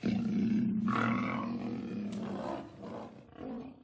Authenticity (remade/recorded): recorded